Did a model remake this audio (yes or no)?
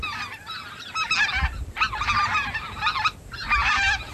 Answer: no